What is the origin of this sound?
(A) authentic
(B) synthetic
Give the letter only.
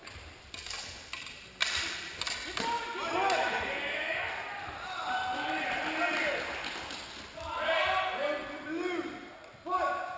A